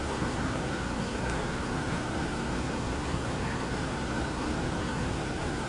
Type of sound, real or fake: fake